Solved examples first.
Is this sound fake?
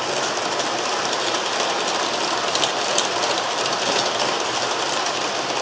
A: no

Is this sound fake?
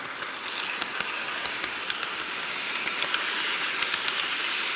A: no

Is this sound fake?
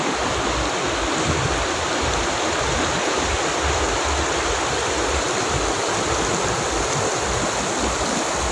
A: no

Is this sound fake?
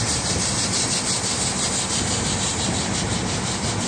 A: no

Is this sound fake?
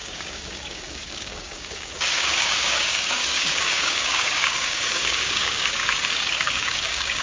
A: yes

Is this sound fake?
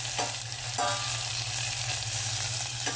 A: no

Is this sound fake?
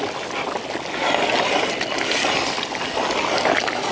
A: no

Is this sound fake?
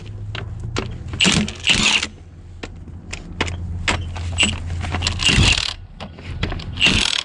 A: no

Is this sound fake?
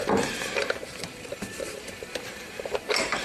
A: yes